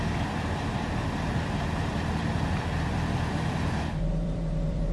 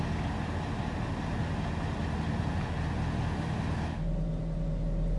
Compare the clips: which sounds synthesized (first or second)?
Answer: first